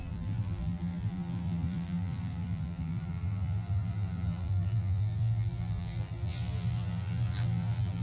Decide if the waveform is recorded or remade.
remade